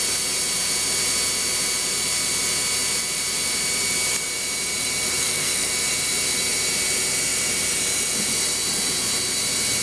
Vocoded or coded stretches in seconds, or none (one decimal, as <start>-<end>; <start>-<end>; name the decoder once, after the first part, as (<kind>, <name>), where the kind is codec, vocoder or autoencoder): 5.2-5.7 (codec, SNAC)